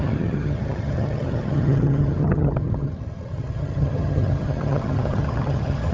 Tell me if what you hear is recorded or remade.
remade